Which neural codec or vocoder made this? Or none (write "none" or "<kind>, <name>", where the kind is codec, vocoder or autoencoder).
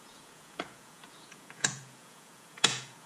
vocoder, Vocos